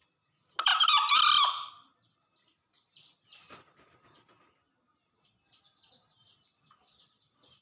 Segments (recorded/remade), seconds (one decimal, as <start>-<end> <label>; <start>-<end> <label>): 0.0-7.6 recorded